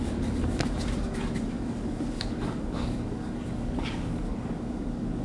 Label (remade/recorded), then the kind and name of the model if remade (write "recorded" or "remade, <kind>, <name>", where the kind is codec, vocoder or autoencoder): remade, codec, DAC